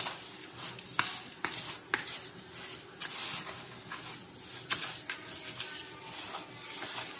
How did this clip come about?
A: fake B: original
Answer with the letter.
B